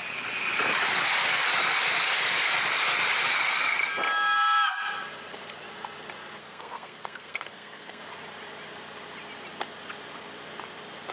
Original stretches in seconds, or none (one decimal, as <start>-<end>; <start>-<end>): 0.0-6.4; 8.0-11.1